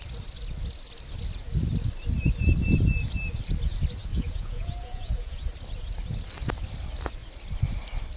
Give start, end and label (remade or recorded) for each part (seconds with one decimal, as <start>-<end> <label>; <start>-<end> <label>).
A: 0.0-4.1 recorded; 4.1-5.5 remade; 5.5-8.2 recorded